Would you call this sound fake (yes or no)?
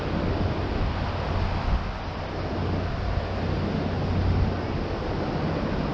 no